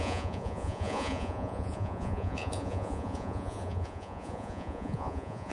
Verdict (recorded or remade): remade